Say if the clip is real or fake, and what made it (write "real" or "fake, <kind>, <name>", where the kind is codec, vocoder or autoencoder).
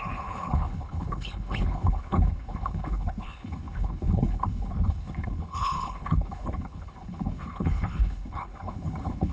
fake, codec, HILCodec